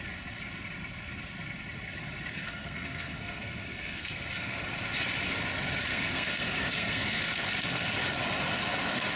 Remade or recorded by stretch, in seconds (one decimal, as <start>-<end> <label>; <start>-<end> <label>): 0.0-2.3 recorded; 2.3-4.6 remade; 4.6-5.9 recorded; 5.9-7.2 remade; 7.2-9.2 recorded